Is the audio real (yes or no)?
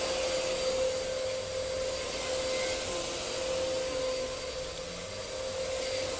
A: yes